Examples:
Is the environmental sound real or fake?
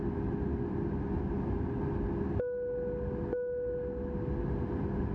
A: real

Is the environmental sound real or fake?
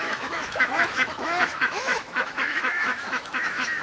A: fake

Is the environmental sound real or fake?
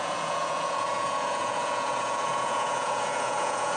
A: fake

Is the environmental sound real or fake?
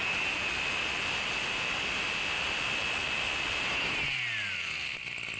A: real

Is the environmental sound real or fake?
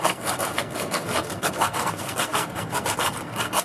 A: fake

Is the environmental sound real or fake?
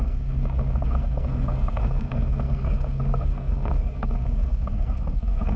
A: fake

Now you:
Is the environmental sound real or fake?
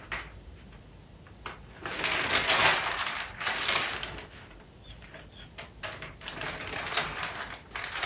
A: real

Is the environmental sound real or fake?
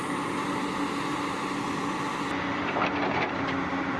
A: real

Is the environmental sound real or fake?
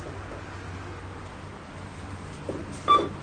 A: real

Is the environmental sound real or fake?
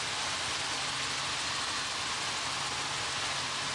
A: real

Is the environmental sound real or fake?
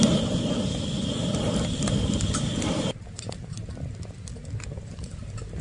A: fake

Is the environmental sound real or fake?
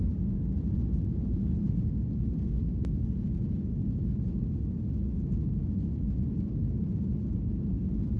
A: real